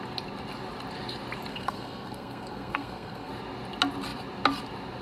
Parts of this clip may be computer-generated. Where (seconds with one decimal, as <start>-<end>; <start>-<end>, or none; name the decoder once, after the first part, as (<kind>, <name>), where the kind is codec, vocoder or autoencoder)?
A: 1.5-3.3 (codec, SNAC)